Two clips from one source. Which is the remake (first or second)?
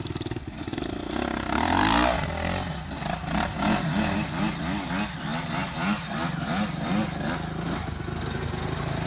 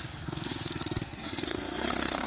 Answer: second